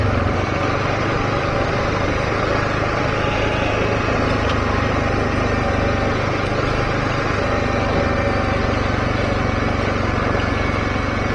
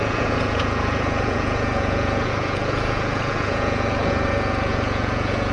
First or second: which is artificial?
second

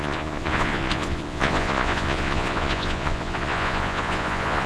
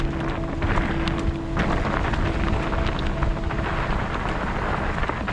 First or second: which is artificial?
first